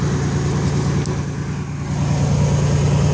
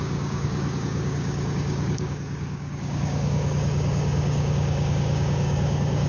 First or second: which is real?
first